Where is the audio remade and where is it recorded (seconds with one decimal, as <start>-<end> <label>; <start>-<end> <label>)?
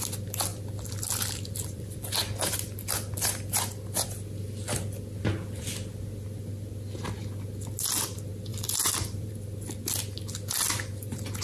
0.0-0.5 recorded; 0.5-2.0 remade; 2.0-8.5 recorded; 8.5-9.3 remade; 9.3-11.4 recorded